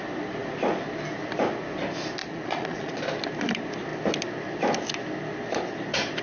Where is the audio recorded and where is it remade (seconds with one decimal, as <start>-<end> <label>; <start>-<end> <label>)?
0.0-2.2 recorded; 2.2-3.0 remade; 3.0-6.2 recorded